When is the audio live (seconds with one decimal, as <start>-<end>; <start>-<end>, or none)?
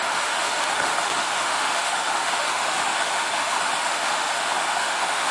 none